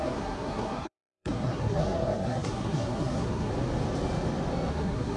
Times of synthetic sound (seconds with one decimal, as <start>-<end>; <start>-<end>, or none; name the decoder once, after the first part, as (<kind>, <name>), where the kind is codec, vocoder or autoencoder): 0.0-3.5 (codec, SNAC); 4.7-5.2